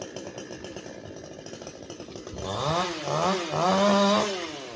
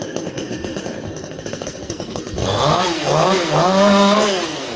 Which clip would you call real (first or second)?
first